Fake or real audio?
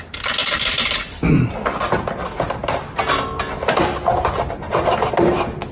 real